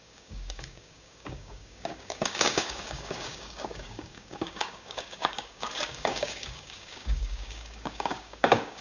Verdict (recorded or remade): remade